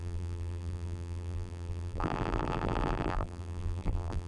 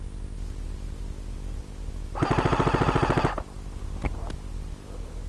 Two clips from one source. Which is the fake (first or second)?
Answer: first